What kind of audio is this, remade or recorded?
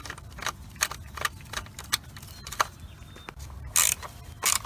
recorded